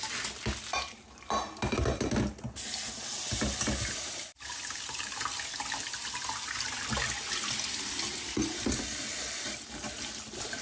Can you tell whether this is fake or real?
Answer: real